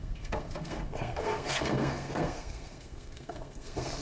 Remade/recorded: remade